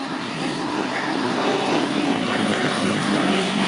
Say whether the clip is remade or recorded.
remade